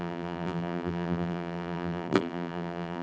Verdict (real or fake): fake